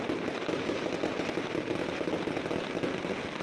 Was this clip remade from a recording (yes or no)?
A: no